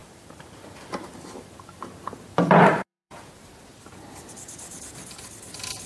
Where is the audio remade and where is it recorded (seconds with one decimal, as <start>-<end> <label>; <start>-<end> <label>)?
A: 0.0-3.5 remade; 3.5-5.9 recorded